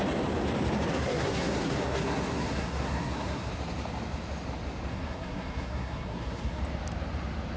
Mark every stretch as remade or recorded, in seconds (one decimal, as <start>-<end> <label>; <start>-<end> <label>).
0.0-0.9 recorded; 0.9-3.5 remade; 3.5-4.9 recorded; 4.9-6.6 remade; 6.6-7.6 recorded